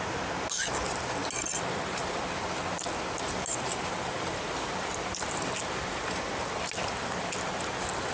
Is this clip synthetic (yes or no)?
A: no